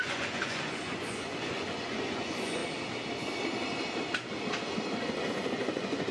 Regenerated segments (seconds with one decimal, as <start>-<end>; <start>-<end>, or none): 0.0-2.6; 5.3-6.1